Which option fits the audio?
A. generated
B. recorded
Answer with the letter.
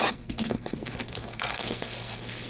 A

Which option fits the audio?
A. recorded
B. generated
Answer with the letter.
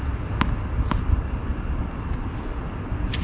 A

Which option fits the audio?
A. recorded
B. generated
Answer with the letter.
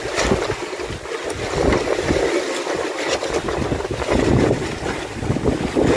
A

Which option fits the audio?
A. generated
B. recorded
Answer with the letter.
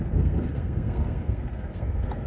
A